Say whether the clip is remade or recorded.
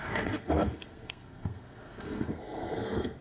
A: remade